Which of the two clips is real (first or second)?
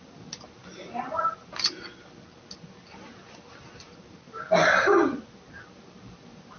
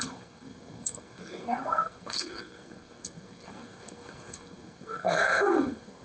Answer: first